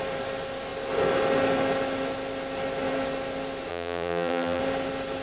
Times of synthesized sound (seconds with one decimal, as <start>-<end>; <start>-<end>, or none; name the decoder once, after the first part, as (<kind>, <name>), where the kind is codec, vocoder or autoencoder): 3.7-4.6 (vocoder, BigVGAN v2)